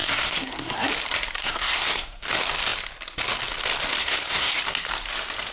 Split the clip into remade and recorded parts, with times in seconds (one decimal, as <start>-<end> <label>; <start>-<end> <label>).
0.0-0.9 remade; 0.9-1.4 recorded; 1.4-2.3 remade; 2.3-4.0 recorded; 4.0-4.5 remade; 4.5-5.5 recorded